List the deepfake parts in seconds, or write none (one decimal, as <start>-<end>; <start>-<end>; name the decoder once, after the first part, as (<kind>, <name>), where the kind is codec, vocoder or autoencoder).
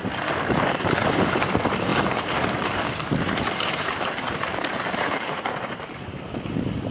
0.0-6.9 (vocoder, BigVGAN v2)